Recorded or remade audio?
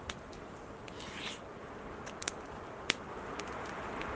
recorded